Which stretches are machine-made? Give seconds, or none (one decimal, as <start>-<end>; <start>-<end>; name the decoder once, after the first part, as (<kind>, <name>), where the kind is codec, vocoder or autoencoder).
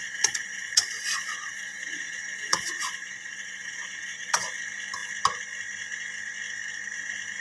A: 0.0-4.4 (vocoder, Vocos)